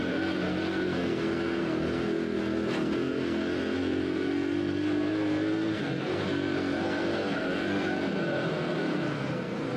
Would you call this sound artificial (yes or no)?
yes